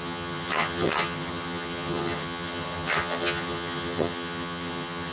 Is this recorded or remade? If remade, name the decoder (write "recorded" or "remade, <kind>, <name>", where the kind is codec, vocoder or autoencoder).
remade, vocoder, HiFi-GAN